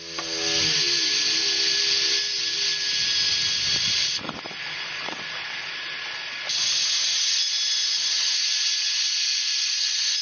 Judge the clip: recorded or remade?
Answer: recorded